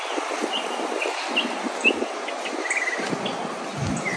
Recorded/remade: recorded